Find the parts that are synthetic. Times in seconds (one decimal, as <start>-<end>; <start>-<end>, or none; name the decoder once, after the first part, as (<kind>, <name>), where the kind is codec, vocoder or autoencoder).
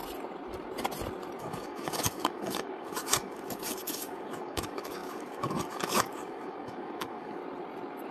1.4-7.4 (codec, DAC)